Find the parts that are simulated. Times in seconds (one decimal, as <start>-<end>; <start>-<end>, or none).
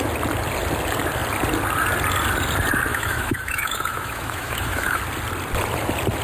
2.9-5.0